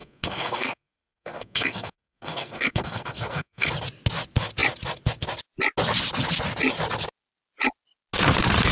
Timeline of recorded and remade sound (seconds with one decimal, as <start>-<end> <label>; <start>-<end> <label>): 0.0-3.7 remade; 3.7-8.7 recorded